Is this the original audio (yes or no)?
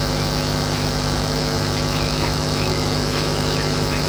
no